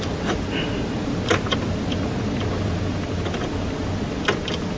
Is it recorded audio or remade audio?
remade